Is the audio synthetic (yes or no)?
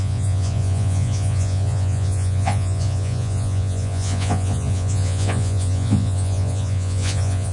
yes